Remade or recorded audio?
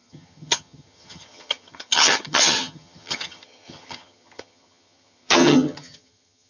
remade